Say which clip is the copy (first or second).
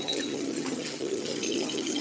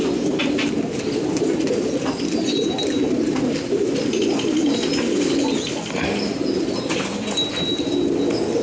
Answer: first